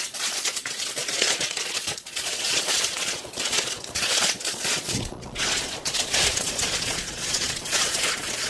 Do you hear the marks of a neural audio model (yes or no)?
yes